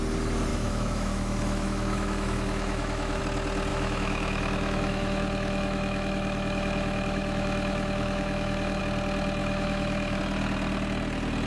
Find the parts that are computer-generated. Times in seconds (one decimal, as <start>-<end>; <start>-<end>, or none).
0.5-3.2; 3.7-8.8; 9.4-10.2